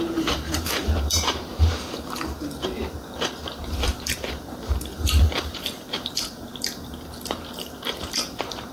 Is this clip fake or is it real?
fake